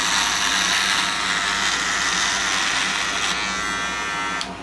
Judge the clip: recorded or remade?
recorded